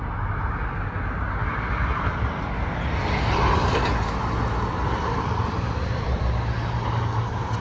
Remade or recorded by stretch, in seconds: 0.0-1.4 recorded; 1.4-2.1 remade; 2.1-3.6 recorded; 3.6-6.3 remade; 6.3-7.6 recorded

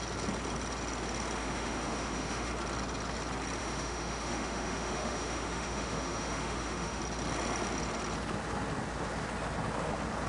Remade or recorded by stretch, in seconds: 0.0-1.4 recorded; 1.4-2.5 remade; 2.5-3.6 recorded; 3.6-7.0 remade; 7.0-10.3 recorded

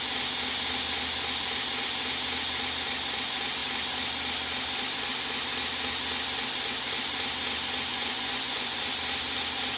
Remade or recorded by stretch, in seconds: 0.0-7.9 recorded; 7.9-8.8 remade; 8.8-9.8 recorded

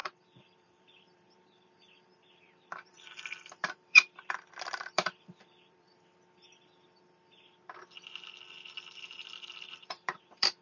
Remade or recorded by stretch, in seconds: 0.0-5.9 remade; 5.9-9.1 recorded; 9.1-10.6 remade